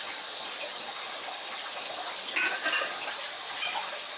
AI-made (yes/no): no